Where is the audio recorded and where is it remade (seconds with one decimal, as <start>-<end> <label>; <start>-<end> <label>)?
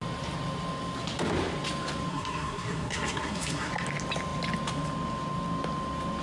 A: 0.0-2.1 recorded; 2.1-3.7 remade; 3.7-6.2 recorded